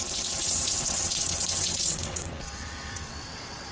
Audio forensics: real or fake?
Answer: fake